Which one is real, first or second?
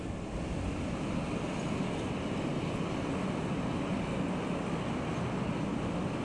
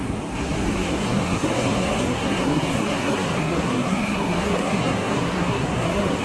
first